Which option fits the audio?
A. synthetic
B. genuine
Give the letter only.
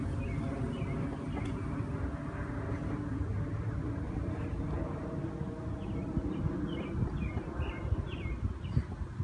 B